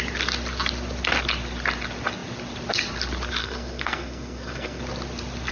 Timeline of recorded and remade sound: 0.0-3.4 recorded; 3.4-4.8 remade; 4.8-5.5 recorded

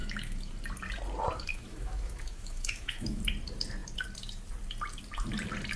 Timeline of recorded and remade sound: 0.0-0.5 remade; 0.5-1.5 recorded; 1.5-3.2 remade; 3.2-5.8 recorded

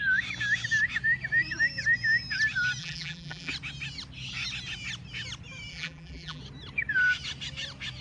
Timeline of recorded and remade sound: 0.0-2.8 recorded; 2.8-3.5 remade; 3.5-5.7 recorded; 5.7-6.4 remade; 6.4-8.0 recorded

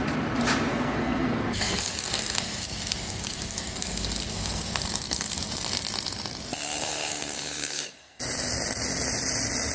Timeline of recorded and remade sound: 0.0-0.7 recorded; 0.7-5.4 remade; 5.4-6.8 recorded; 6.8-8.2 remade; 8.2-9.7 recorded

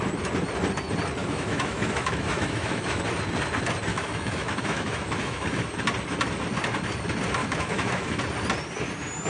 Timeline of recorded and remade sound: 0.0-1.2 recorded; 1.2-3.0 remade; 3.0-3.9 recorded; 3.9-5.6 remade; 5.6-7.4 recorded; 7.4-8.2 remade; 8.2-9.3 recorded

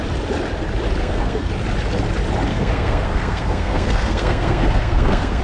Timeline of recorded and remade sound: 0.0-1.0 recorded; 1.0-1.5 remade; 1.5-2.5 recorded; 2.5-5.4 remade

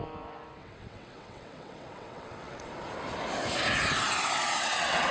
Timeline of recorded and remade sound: 0.0-0.6 recorded; 0.6-2.7 remade; 2.7-4.4 recorded; 4.4-5.1 remade